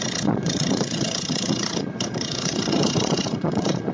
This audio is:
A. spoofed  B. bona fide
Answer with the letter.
A